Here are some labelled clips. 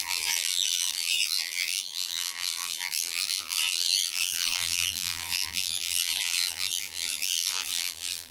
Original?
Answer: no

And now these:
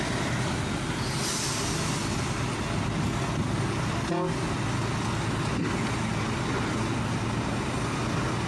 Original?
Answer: yes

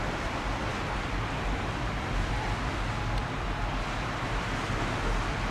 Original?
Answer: no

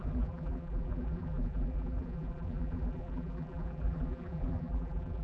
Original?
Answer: no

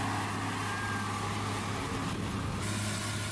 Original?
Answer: yes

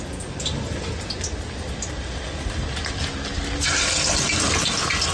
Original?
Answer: yes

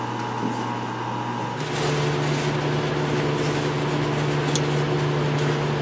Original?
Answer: yes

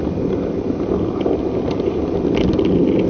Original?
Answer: yes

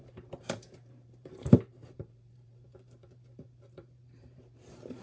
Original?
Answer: no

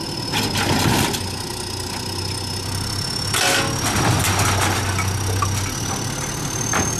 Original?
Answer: yes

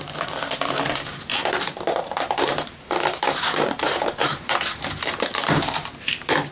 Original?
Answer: no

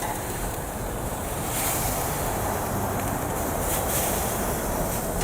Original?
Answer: no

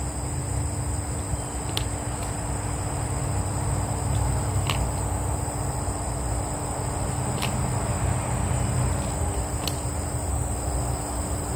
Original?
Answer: yes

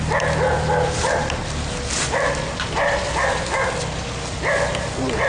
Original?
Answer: yes